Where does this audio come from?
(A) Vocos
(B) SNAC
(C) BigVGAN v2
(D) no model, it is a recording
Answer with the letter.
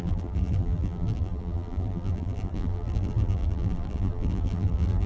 C